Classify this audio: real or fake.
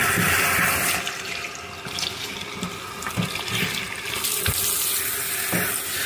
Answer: real